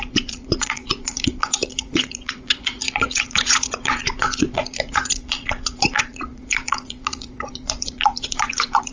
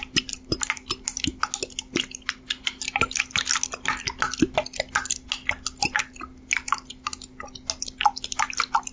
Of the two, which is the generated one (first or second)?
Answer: first